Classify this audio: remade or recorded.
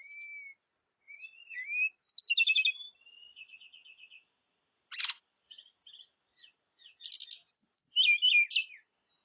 recorded